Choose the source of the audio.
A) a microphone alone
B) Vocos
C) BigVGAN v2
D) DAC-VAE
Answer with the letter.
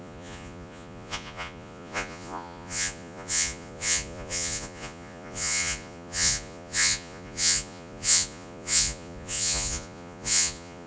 B